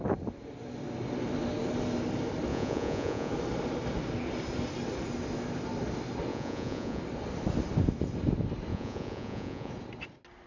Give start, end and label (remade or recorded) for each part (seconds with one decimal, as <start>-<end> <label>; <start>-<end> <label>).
0.0-2.5 recorded; 2.5-3.3 remade; 3.3-6.3 recorded; 6.3-7.0 remade; 7.0-8.7 recorded; 8.7-9.7 remade; 9.7-10.5 recorded